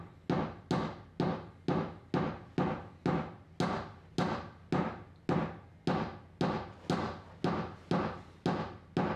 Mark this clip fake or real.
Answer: real